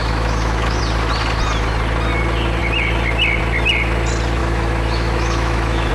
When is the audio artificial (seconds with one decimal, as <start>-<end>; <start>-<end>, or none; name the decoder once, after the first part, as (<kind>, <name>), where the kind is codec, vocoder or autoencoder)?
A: 0.0-0.8 (autoencoder, DAC-VAE); 4.4-5.9